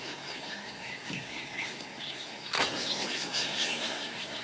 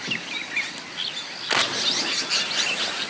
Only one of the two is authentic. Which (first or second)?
second